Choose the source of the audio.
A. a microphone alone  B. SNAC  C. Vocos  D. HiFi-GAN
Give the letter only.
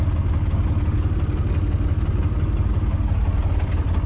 A